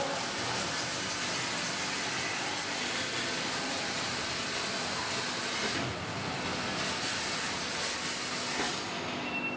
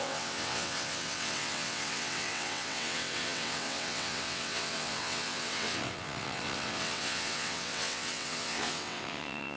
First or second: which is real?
first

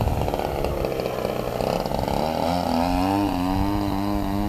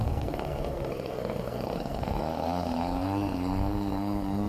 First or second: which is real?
first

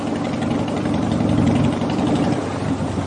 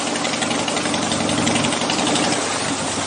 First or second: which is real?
second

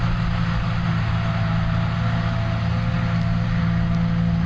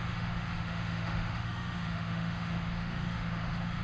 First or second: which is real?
first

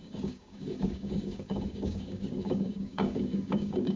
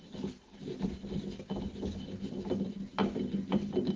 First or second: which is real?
second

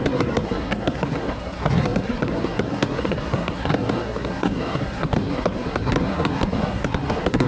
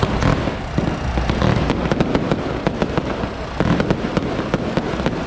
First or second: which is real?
second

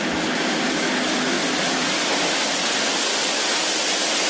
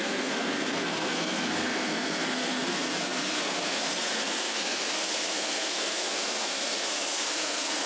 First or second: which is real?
first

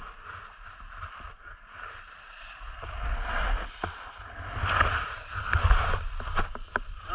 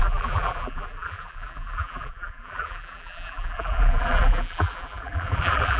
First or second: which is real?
first